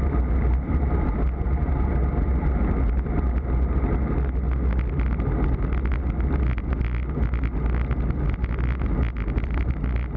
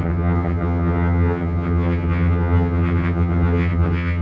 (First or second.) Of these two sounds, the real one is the first